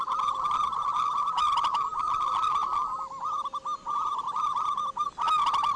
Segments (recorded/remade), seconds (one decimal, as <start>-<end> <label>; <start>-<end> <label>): 0.0-5.8 recorded